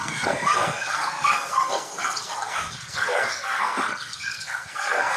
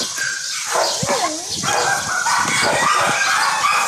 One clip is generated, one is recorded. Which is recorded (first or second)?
second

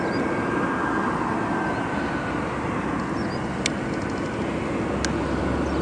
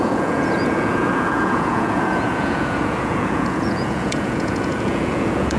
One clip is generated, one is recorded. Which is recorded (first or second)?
first